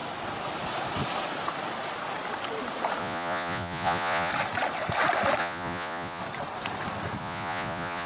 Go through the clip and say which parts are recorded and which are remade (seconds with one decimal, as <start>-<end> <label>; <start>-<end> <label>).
0.0-3.0 recorded; 3.0-4.3 remade; 4.3-5.4 recorded; 5.4-6.2 remade; 6.2-7.2 recorded; 7.2-8.1 remade